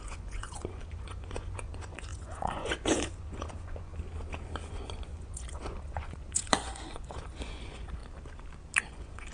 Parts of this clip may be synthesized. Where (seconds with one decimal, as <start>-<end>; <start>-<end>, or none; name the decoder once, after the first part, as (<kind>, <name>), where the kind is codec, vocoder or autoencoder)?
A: 0.0-3.9 (vocoder, Vocos); 4.7-8.0; 8.8-9.3

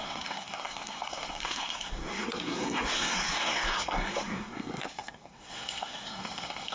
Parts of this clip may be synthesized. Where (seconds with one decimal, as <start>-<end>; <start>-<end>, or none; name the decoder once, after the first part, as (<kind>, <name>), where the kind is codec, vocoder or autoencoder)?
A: 0.0-6.7 (codec, SNAC)

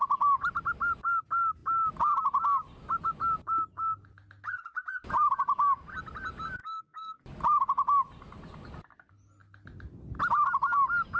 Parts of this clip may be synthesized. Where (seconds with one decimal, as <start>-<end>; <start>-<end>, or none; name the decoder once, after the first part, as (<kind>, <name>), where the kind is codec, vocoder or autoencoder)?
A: 6.6-7.2 (codec, DAC)

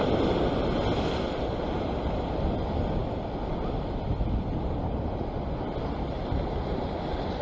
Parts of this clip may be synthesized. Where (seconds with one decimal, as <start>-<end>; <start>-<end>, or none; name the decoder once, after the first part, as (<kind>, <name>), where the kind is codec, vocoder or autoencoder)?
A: none

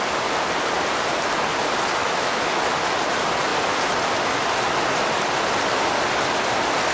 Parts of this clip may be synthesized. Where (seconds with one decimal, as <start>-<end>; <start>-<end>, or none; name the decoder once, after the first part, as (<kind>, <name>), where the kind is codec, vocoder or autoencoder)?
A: 2.0-2.6 (autoencoder, DAC-VAE)

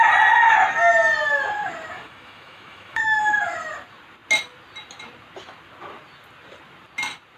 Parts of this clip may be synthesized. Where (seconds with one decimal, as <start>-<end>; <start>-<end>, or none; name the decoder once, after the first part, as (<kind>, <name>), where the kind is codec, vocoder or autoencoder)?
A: 1.9-3.2 (autoencoder, DAC-VAE)